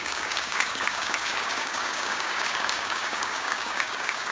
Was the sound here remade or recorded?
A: remade